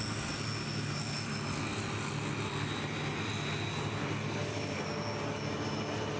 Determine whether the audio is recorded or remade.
recorded